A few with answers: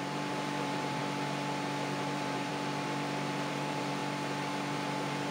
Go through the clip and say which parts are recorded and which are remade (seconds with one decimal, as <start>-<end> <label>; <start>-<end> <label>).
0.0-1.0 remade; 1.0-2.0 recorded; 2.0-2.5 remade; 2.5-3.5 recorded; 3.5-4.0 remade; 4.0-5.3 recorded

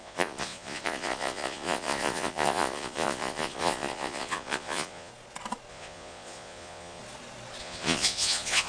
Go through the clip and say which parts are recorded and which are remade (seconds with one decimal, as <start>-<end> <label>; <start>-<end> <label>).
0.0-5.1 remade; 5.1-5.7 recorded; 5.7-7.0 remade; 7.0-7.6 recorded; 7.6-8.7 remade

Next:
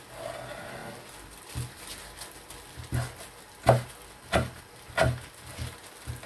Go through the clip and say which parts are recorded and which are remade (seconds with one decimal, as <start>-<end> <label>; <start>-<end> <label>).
0.0-6.3 recorded

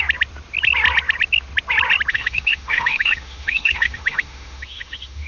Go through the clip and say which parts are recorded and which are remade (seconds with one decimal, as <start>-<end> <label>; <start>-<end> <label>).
0.0-2.1 recorded; 2.1-5.3 remade